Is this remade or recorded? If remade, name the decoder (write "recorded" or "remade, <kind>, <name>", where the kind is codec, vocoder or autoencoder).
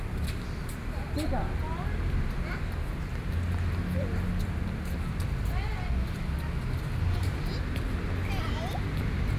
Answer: recorded